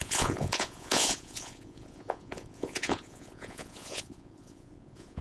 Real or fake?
fake